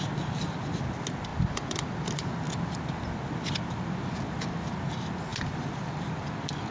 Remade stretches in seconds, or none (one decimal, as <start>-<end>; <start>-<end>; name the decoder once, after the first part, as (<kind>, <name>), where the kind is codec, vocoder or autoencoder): 1.3-2.3 (vocoder, BigVGAN v2)